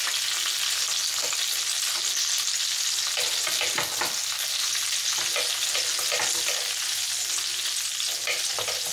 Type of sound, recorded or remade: recorded